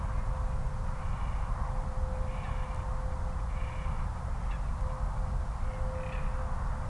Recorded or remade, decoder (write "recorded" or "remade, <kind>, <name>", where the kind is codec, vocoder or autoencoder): recorded